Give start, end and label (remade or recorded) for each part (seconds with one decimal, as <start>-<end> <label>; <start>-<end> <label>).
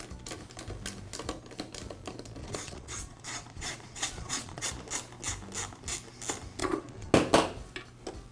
0.0-2.4 recorded; 2.4-4.7 remade; 4.7-6.6 recorded; 6.6-7.1 remade; 7.1-8.3 recorded